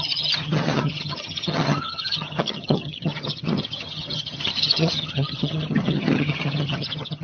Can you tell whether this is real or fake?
fake